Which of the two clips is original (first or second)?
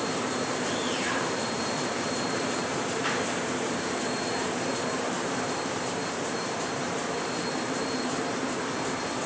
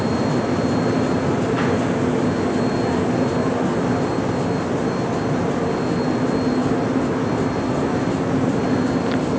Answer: second